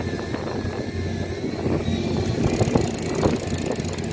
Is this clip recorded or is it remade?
recorded